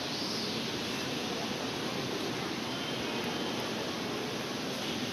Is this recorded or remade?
recorded